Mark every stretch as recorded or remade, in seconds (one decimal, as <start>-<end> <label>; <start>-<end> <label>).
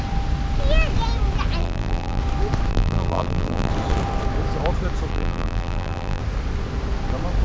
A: 0.0-1.6 recorded; 1.6-2.2 remade; 2.2-2.7 recorded; 2.7-3.7 remade; 3.7-5.1 recorded; 5.1-6.2 remade; 6.2-7.4 recorded